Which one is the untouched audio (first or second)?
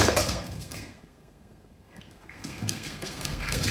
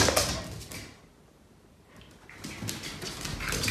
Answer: second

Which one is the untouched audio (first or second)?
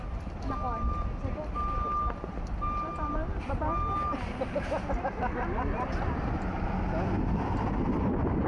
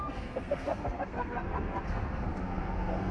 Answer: first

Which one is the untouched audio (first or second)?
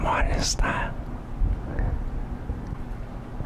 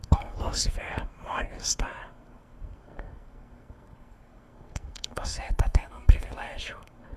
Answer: first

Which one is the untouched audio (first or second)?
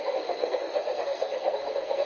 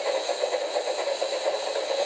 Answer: second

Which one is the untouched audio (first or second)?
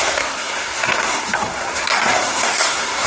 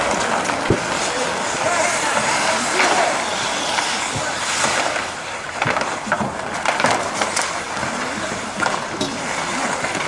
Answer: second